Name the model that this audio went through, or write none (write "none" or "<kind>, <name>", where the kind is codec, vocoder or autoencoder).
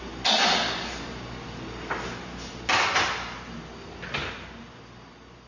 none